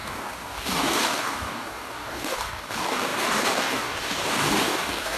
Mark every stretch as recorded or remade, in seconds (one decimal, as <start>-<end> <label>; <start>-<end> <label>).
0.0-5.2 remade